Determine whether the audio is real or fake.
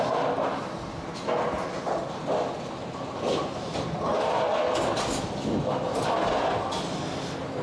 real